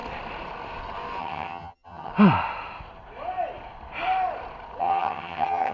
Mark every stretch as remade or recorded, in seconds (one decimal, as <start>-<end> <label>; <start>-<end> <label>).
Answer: 0.0-1.2 recorded; 1.2-2.1 remade; 2.1-4.8 recorded; 4.8-5.7 remade